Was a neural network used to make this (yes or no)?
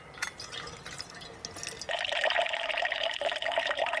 no